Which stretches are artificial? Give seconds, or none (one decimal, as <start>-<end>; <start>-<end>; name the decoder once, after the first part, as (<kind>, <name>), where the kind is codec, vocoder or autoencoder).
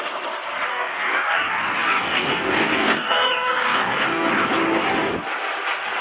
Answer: 0.7-4.3 (codec, DAC)